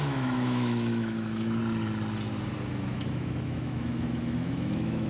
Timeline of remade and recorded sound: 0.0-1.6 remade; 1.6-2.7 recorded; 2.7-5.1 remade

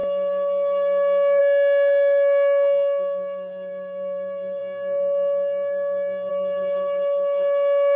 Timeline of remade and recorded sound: 0.0-1.4 recorded; 1.4-4.6 remade; 4.6-6.3 recorded; 6.3-8.0 remade

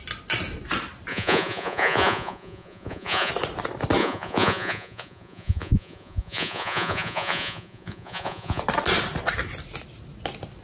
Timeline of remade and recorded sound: 0.0-1.1 recorded; 1.1-3.3 remade; 3.3-4.0 recorded; 4.0-8.6 remade; 8.6-10.6 recorded

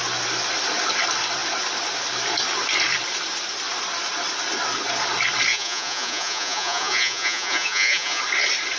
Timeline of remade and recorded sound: 0.0-5.5 recorded; 5.5-8.2 remade; 8.2-8.8 recorded

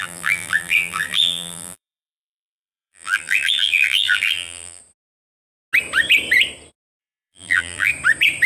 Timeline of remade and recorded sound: 0.0-4.8 remade; 4.8-7.0 recorded; 7.0-7.9 remade; 7.9-8.5 recorded

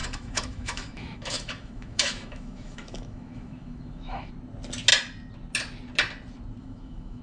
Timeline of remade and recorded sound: 0.0-4.3 remade; 4.3-6.6 recorded; 6.6-7.2 remade

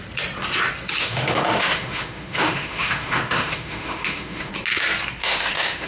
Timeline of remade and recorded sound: 0.0-1.0 recorded; 1.0-4.5 remade; 4.5-5.2 recorded; 5.2-5.9 remade